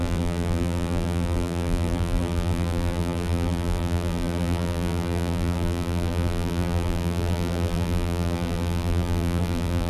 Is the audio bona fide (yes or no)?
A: no